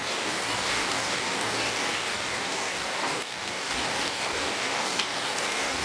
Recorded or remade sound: remade